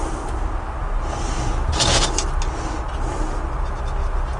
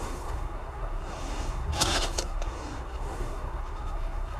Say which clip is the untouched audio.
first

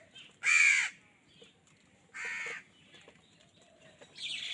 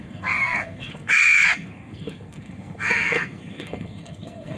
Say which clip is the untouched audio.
first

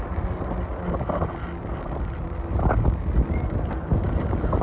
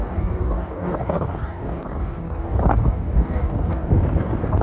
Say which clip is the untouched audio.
first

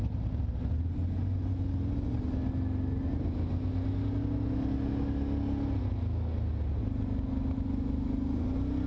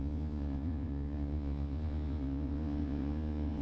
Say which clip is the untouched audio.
first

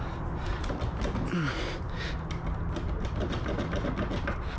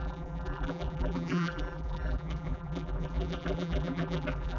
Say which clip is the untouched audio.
first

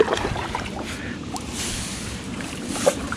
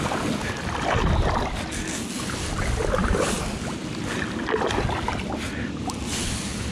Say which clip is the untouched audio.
second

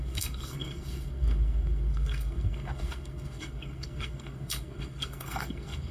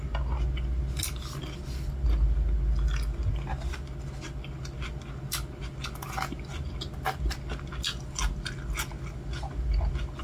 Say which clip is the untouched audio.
second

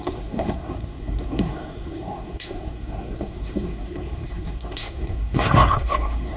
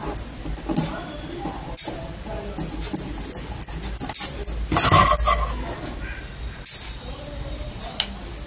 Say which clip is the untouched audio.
second